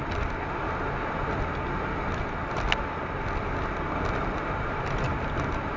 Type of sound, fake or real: real